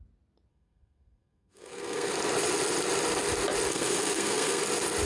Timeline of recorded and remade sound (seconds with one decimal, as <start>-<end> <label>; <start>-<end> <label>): 0.0-0.5 recorded; 0.5-2.1 remade; 2.1-3.7 recorded; 3.7-4.6 remade; 4.6-5.1 recorded